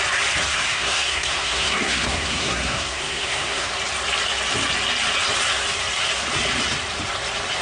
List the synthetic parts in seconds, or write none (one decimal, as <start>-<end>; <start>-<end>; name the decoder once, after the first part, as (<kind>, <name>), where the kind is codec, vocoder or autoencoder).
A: 0.5-3.7 (codec, SNAC)